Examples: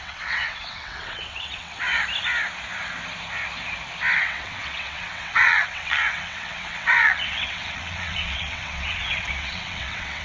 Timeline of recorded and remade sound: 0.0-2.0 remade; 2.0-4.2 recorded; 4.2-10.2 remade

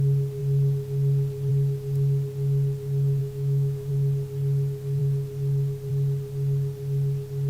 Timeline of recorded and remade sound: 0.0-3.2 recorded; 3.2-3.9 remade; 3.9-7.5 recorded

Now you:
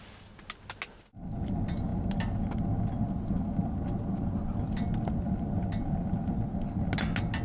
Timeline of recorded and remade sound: 0.0-7.4 recorded

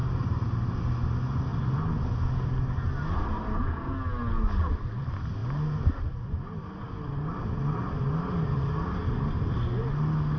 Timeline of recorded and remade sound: 0.0-10.4 recorded